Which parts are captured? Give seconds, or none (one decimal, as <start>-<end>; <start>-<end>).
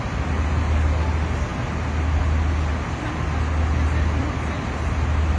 0.0-5.4